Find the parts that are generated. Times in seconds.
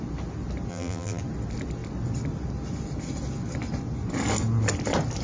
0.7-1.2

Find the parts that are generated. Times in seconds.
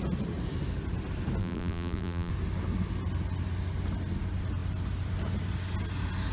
1.4-2.3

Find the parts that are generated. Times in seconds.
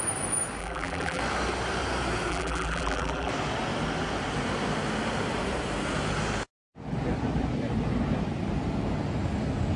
0.6-1.2; 2.3-3.3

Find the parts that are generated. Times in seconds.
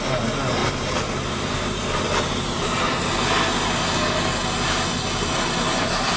0.6-3.1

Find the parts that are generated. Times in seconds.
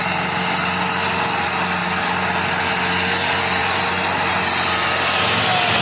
1.8-2.7; 3.6-4.4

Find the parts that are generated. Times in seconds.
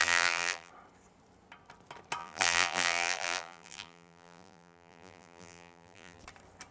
0.0-0.7; 2.2-6.2